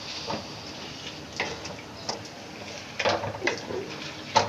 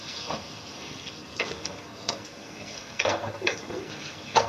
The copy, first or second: second